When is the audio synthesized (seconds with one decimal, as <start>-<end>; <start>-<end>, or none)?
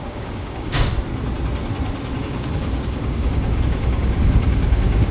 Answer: 0.0-0.9; 2.2-5.1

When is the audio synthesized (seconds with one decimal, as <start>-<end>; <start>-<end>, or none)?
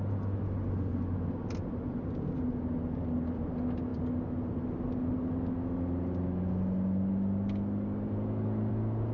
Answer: none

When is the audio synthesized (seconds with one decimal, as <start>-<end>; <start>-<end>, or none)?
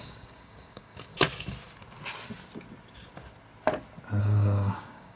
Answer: 0.0-1.1; 4.2-5.2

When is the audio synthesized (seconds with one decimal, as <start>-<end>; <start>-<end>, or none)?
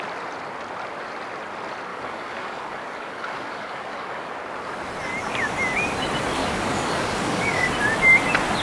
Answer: 1.9-4.3; 6.4-7.7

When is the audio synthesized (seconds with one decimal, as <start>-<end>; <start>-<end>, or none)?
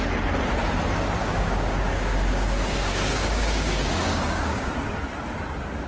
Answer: 1.2-4.7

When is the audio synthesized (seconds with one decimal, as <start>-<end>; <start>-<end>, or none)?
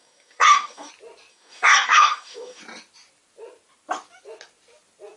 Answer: 0.0-0.9; 1.3-2.6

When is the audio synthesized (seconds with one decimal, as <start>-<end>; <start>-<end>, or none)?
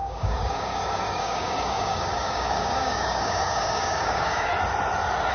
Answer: 0.0-4.5